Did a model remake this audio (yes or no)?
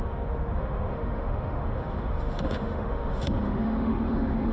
yes